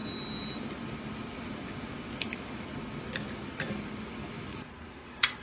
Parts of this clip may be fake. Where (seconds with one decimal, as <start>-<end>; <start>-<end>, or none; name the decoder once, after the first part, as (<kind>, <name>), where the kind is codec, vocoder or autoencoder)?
4.5-5.4 (vocoder, Vocos)